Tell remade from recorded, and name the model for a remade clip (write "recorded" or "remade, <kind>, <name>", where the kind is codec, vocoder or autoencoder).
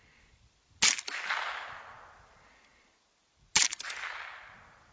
recorded